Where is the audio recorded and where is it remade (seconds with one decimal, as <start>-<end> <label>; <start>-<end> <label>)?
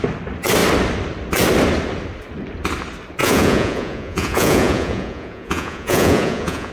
0.0-3.2 recorded; 3.2-6.7 remade